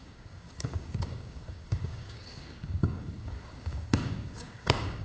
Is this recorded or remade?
remade